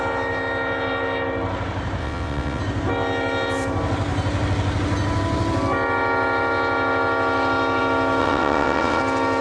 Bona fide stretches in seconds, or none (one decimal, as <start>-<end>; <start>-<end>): 0.0-2.0; 2.6-8.2; 9.0-9.4